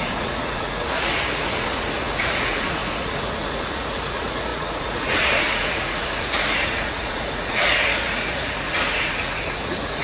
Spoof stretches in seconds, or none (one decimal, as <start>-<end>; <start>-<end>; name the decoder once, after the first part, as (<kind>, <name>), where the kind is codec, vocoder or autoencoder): 0.0-10.0 (vocoder, Vocos)